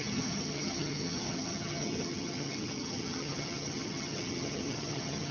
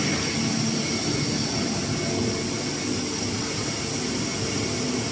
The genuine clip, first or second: second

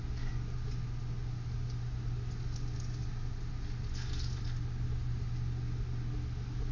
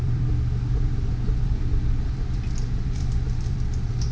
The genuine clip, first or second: first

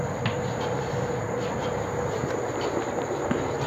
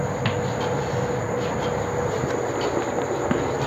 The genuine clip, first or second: second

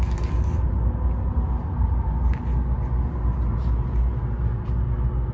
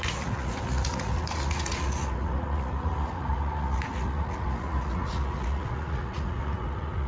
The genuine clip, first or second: first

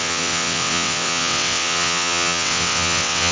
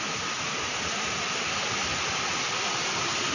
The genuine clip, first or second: second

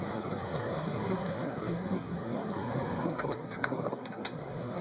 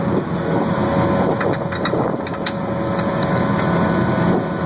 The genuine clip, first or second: second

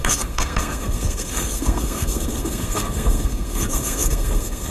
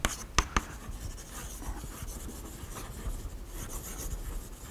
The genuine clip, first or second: second